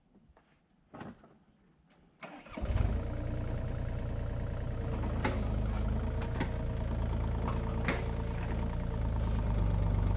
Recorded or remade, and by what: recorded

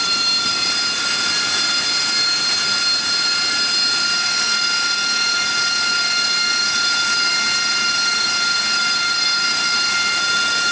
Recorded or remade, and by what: recorded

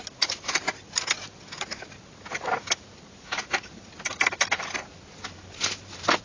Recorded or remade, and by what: recorded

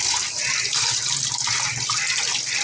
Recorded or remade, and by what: recorded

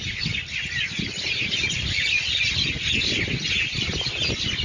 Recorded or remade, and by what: recorded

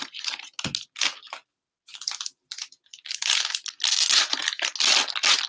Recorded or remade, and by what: recorded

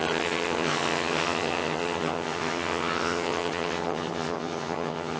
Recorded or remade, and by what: remade, vocoder, HiFi-GAN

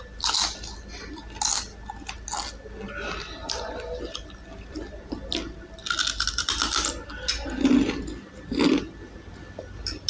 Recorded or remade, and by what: recorded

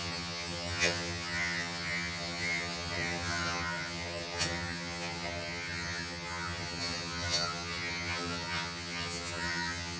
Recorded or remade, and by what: remade, vocoder, HiFi-GAN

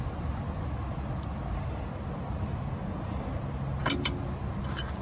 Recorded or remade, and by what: recorded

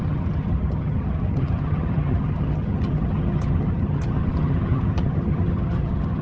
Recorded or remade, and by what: remade, vocoder, HiFi-GAN